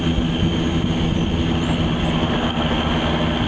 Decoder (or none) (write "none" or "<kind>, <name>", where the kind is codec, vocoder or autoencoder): none